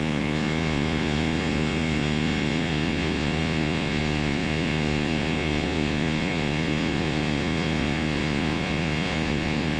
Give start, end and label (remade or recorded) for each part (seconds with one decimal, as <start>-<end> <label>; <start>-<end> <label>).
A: 0.0-9.8 remade